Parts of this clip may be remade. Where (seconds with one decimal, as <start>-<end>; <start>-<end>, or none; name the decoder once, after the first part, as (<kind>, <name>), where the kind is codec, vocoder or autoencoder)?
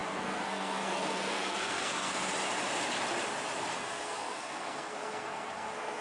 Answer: 0.0-2.3 (codec, SNAC); 3.7-6.0